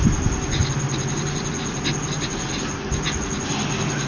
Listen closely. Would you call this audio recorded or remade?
recorded